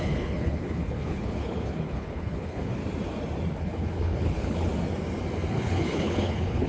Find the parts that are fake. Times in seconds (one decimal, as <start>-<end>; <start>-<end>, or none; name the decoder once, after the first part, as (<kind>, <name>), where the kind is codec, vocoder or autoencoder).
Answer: 0.0-2.8 (codec, HILCodec); 3.6-4.7; 5.5-6.7